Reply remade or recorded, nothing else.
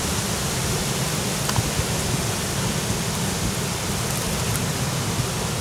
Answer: recorded